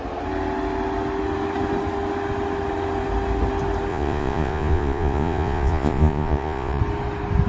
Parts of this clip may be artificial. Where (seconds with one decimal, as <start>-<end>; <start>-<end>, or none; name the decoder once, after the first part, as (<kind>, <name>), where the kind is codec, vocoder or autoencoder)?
3.9-6.8 (vocoder, Vocos)

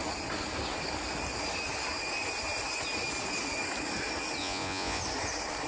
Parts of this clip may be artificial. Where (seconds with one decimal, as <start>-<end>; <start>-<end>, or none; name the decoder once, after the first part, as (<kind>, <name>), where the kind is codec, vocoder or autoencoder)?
4.4-5.0 (vocoder, Vocos)

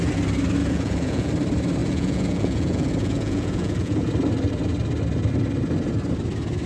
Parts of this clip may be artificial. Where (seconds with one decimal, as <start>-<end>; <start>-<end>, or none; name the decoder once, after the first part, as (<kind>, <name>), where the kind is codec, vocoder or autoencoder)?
0.6-1.3 (vocoder, Vocos); 1.8-4.1

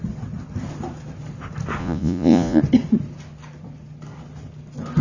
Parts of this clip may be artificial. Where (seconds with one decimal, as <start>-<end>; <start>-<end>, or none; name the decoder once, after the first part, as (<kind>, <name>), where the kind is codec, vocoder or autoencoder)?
1.8-2.6 (vocoder, Vocos)